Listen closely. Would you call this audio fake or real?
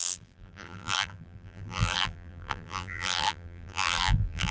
fake